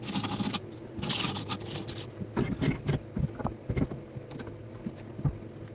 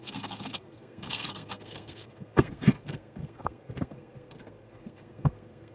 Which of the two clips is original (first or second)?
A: first